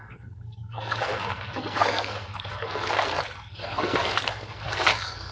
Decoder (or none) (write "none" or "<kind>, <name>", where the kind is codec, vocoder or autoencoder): codec, SNAC